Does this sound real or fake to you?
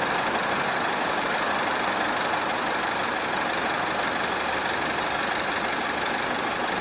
real